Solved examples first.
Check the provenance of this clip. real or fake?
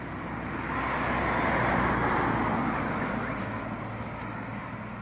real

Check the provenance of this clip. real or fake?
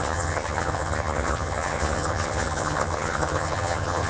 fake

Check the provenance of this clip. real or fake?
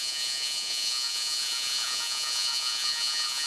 fake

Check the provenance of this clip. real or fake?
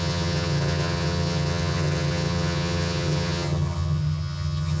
fake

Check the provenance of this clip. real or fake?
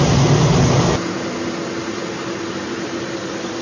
real